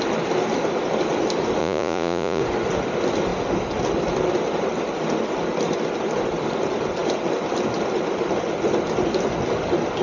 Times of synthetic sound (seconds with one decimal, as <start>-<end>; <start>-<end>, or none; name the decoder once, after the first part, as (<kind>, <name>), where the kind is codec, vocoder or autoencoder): 1.6-2.4 (vocoder, Vocos)